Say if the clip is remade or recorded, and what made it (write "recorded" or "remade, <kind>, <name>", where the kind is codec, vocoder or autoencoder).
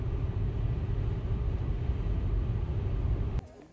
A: recorded